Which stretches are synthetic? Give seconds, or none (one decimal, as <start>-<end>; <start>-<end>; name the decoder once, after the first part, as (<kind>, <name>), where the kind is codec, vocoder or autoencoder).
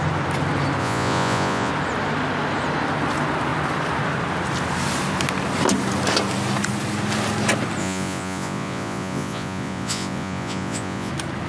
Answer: 0.8-1.7 (vocoder, Vocos); 7.8-11.1